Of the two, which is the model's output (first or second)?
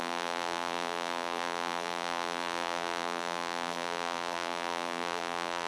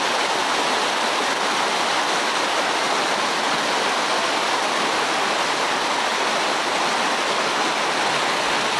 first